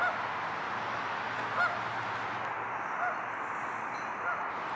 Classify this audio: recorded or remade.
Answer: recorded